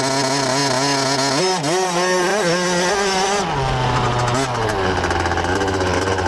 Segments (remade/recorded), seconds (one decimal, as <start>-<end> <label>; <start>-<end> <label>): 0.0-6.3 recorded